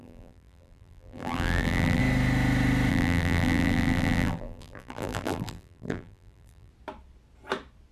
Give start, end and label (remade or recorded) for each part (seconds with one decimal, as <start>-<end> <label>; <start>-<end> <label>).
0.0-2.0 remade; 2.0-2.9 recorded; 2.9-6.7 remade; 6.7-7.9 recorded